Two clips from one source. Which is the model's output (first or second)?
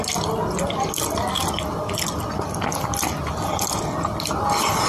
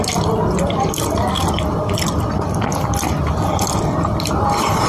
second